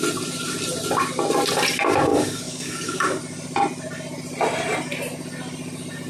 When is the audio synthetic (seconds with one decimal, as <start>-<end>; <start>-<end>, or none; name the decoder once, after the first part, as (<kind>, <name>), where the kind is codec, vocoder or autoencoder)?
2.1-3.2 (codec, DAC)